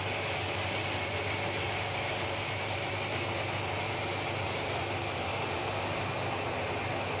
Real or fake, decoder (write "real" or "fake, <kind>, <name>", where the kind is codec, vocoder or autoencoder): real